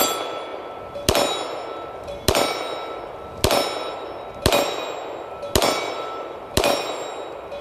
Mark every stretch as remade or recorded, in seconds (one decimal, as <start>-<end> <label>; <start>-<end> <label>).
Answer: 0.0-7.6 recorded